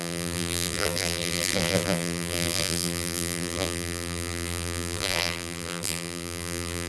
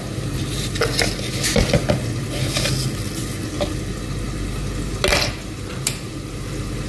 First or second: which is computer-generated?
first